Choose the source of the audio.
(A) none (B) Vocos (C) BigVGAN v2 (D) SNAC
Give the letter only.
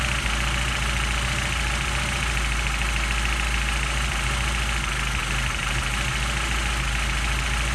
A